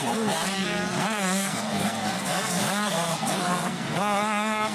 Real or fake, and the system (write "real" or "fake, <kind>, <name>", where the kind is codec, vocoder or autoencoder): fake, codec, SNAC